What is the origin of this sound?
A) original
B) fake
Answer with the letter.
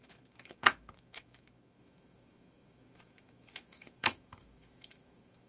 B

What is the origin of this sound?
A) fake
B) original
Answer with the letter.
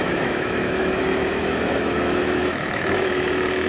A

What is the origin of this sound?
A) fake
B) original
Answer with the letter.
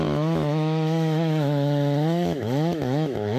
A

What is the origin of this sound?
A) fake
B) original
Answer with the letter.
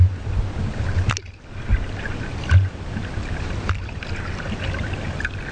B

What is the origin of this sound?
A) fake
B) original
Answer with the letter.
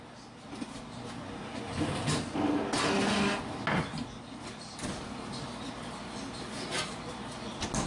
B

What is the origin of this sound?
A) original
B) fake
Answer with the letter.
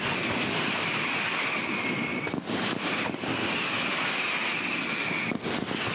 A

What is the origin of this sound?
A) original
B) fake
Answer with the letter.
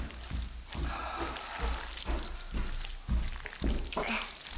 A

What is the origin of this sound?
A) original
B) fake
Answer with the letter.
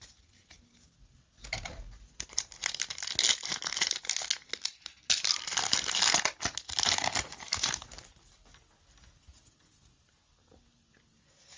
A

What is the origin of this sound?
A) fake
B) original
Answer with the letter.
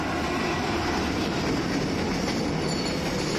B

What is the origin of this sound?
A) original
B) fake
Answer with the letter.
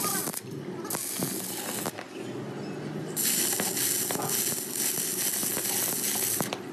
A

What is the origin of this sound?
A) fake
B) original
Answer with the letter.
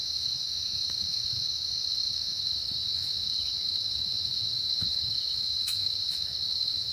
A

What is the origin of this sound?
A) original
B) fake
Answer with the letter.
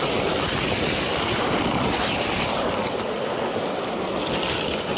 A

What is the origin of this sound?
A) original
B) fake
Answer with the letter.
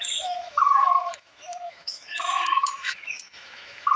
B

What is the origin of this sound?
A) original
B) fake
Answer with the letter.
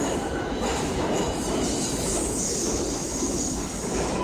B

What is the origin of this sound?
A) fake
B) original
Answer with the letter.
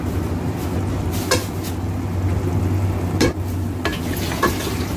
B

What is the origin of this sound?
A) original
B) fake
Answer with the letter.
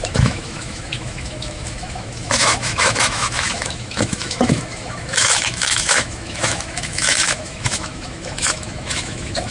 B